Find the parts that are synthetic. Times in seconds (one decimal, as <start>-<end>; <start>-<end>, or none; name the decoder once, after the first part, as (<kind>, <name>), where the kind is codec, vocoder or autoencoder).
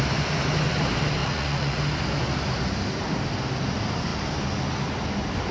1.2-1.8 (vocoder, Vocos)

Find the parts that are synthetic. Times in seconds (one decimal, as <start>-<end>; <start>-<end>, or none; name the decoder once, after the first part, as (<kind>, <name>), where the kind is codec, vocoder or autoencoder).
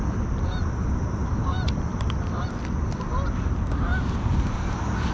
1.2-3.3 (vocoder, BigVGAN v2); 3.9-4.6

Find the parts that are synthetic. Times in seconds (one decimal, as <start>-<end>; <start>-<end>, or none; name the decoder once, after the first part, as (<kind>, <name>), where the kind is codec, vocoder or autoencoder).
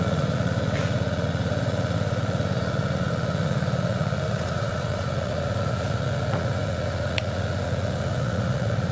0.0-8.9 (vocoder, Vocos)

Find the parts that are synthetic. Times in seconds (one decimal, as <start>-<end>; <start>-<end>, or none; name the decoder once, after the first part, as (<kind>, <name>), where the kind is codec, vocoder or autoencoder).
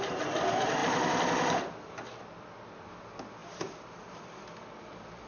3.4-4.8 (vocoder, BigVGAN v2)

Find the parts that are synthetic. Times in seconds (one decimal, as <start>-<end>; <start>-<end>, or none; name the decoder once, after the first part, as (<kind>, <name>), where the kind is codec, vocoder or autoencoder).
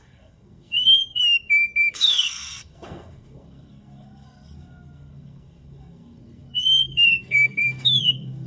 0.0-1.2 (codec, SNAC); 1.9-8.5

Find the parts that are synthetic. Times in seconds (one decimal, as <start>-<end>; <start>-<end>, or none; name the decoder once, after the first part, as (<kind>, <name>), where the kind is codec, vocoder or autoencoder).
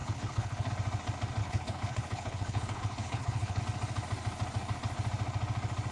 0.0-0.7 (codec, HILCodec); 1.4-3.6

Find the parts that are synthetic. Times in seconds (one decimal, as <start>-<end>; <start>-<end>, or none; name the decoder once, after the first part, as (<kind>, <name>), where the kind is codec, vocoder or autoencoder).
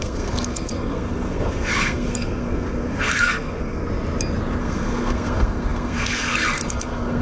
0.0-3.8 (codec, SNAC); 4.6-7.2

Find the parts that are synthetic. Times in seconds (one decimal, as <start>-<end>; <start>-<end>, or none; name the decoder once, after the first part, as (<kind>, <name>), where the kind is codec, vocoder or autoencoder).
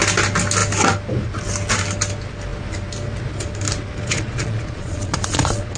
4.0-5.8 (vocoder, Vocos)